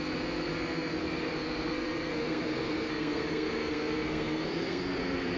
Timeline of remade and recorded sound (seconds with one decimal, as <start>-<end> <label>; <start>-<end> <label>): 0.0-5.4 remade